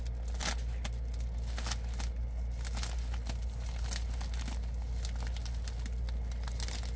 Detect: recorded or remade recorded